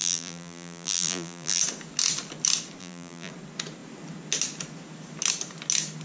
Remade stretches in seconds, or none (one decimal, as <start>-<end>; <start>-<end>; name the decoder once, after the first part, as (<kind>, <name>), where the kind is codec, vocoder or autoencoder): 0.0-1.6 (vocoder, BigVGAN v2); 2.8-3.3